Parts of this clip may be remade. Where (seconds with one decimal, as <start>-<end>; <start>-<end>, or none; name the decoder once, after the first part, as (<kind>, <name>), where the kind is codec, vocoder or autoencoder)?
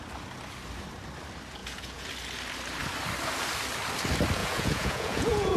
1.6-2.1 (vocoder, Vocos); 4.4-5.6